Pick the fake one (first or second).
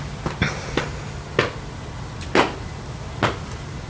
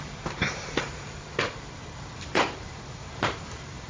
second